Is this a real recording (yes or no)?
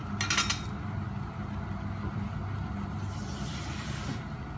yes